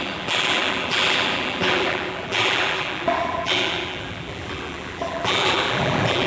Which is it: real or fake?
fake